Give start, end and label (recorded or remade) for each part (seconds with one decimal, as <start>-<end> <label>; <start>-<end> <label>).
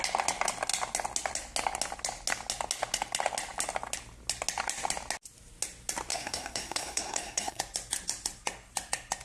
0.0-6.1 recorded; 6.1-7.6 remade; 7.6-9.2 recorded